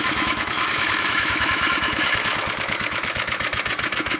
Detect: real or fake fake